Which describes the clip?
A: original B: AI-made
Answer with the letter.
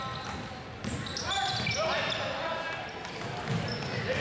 A